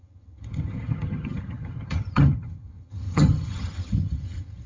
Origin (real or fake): fake